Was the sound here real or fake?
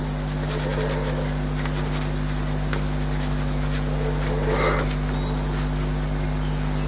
real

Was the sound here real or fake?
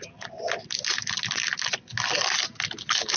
real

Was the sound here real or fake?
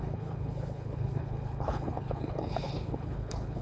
fake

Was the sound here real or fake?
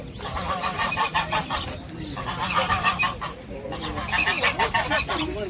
real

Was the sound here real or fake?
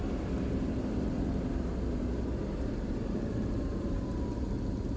real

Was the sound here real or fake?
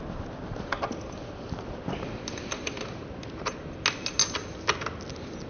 real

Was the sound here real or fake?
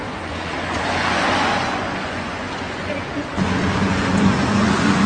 fake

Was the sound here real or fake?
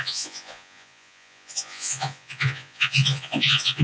fake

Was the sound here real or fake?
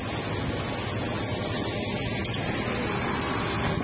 real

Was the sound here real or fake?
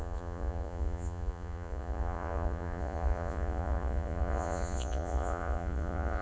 fake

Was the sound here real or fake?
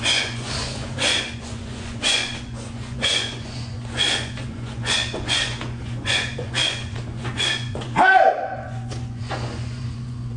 fake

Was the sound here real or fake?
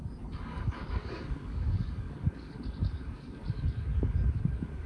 fake